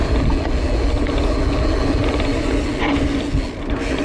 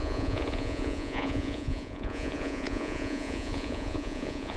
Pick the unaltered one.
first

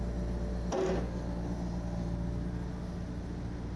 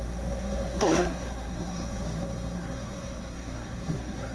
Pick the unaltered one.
first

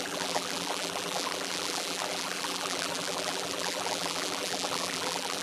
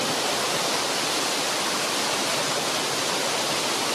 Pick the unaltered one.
second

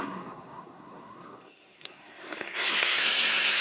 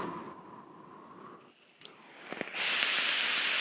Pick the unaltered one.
second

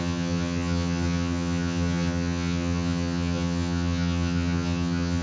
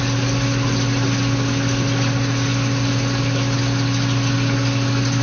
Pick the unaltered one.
second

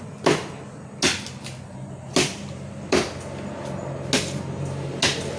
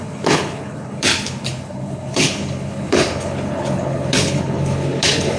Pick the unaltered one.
first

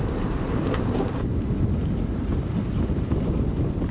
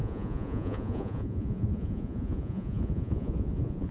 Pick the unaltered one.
first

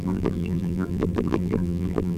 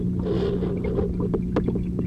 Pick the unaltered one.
second